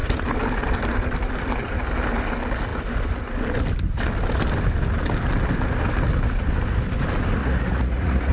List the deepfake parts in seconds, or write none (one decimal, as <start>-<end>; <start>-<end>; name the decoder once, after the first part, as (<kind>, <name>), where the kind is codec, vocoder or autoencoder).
7.4-8.3 (vocoder, Vocos)